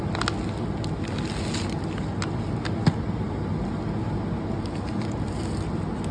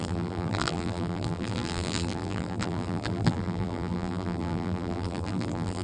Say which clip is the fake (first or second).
second